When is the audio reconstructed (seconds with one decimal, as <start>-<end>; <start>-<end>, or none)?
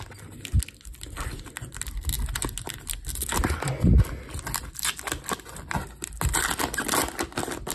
none